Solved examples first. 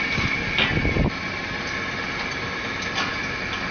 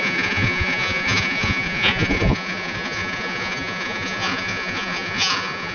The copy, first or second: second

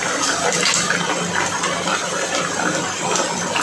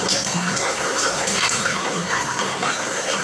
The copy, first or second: second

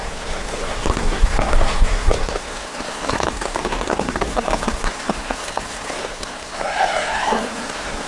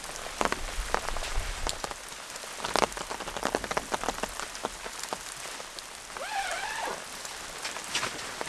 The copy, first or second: first